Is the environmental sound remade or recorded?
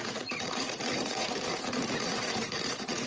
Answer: remade